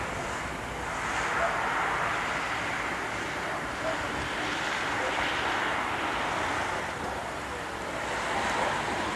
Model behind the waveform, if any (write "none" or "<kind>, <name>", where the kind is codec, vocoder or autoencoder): none